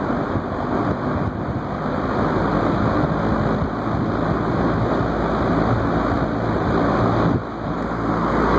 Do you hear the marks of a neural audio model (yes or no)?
no